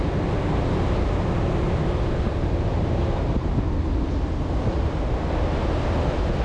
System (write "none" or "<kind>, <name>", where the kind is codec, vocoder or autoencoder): none